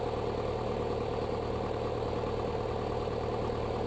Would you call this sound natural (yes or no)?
yes